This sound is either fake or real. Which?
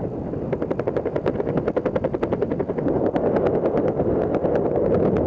real